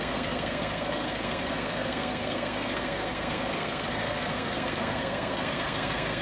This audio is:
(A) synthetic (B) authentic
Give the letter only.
A